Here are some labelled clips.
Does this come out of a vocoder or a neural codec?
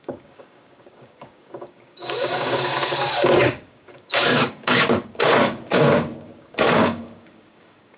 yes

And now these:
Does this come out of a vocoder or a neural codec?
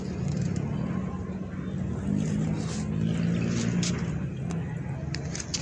no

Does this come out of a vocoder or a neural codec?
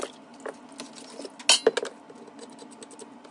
no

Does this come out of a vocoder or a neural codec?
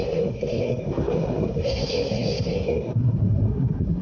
yes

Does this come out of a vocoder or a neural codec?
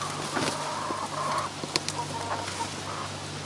no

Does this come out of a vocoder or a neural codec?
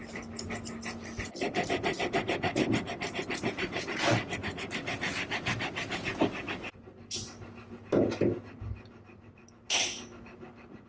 no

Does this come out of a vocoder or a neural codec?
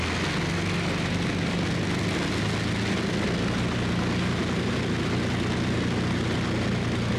no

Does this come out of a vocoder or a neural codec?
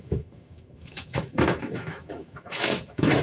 yes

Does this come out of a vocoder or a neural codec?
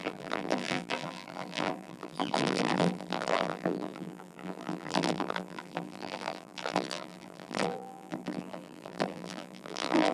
yes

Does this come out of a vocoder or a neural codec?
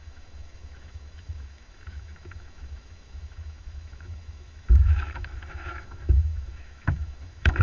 yes